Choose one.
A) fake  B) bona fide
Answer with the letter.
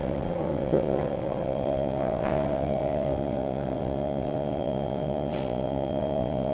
A